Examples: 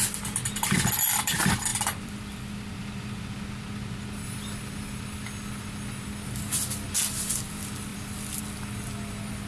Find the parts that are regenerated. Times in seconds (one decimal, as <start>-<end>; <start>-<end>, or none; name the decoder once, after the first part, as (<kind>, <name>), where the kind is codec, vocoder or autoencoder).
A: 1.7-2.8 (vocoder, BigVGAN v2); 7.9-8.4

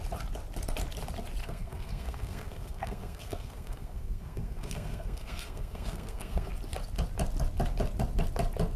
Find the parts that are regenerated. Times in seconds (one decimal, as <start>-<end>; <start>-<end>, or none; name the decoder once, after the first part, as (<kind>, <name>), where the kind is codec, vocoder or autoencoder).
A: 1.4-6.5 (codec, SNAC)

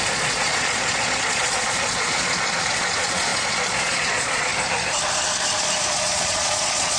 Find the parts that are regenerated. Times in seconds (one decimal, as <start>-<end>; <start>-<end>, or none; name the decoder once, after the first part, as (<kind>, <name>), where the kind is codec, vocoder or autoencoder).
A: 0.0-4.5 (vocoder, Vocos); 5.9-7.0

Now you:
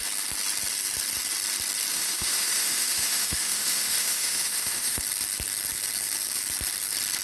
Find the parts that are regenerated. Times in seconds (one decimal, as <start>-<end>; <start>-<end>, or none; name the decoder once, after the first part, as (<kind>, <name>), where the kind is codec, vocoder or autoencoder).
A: 1.9-5.0 (autoencoder, DAC-VAE)

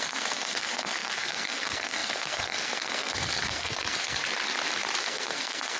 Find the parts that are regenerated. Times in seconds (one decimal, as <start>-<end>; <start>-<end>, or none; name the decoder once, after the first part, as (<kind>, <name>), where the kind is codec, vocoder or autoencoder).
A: 0.0-4.2 (codec, SNAC); 5.0-5.8